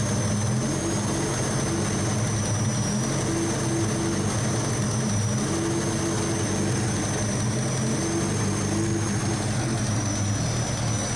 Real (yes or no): yes